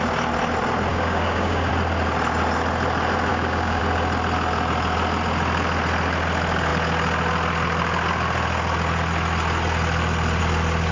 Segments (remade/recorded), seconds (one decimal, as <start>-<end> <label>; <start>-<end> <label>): 0.0-0.9 recorded; 0.9-1.7 remade; 1.7-3.3 recorded; 3.3-3.8 remade; 3.8-10.9 recorded